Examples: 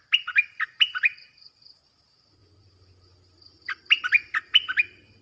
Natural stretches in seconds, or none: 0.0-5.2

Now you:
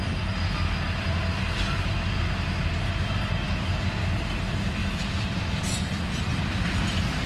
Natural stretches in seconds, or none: 0.0-4.8; 5.6-7.3

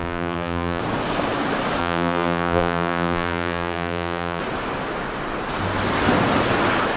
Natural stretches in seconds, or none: 0.8-1.8; 4.4-7.0

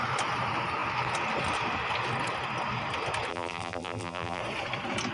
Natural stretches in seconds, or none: 0.0-3.3; 4.4-5.1

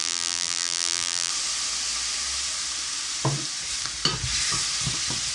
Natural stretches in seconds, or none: 1.3-5.3